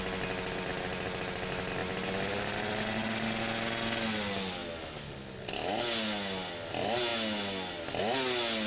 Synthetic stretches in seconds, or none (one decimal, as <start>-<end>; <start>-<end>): none